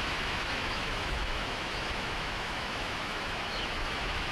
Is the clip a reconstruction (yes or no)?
yes